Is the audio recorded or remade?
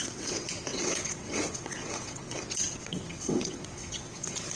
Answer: remade